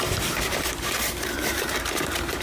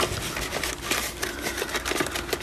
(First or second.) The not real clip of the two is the first